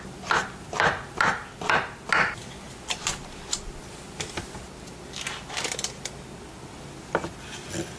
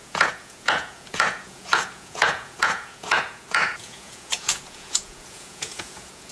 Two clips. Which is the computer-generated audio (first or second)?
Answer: second